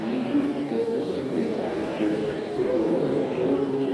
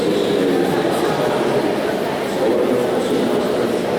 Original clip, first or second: second